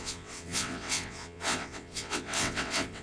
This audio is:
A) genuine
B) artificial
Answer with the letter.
B